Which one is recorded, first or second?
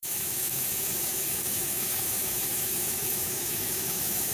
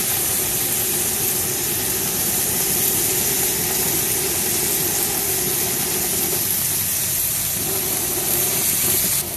second